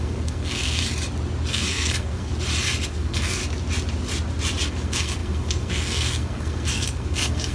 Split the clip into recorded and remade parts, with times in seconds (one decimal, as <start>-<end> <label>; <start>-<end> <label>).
0.0-0.8 remade; 0.8-1.5 recorded; 1.5-2.3 remade; 2.3-2.9 recorded; 2.9-3.4 remade; 3.4-4.7 recorded; 4.7-7.5 remade